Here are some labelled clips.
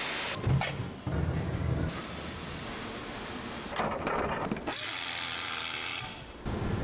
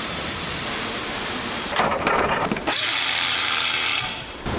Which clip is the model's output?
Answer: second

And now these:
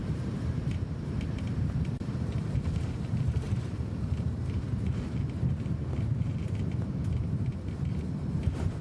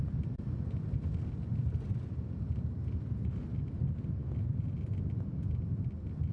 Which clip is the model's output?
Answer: first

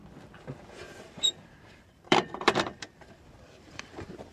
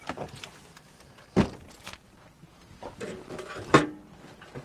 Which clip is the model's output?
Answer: first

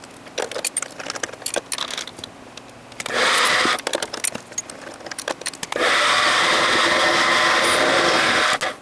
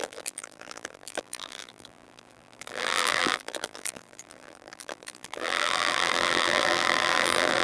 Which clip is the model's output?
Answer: second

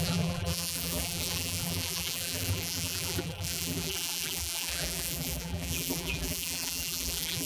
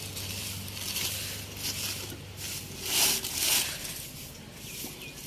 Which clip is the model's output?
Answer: first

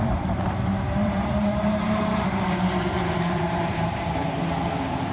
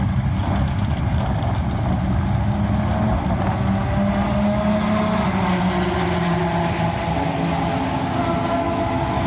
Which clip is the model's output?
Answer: first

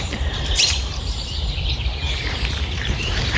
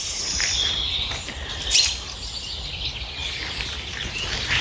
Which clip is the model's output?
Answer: first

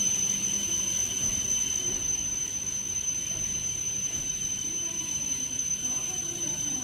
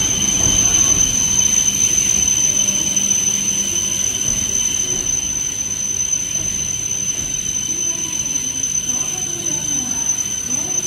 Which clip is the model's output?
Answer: first